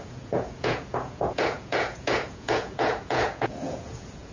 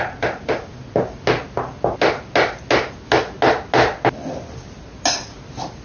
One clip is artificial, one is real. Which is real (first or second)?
second